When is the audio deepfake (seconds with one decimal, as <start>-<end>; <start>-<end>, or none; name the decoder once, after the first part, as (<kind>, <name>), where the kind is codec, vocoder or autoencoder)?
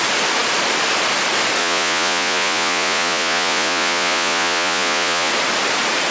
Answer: 1.6-5.3 (vocoder, Vocos)